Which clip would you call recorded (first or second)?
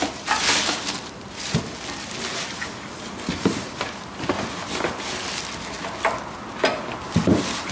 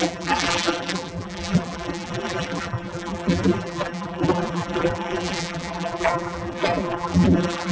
first